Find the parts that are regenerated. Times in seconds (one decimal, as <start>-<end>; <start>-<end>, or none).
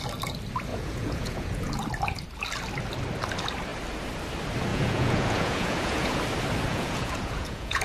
0.7-1.7; 4.7-6.2; 6.7-7.8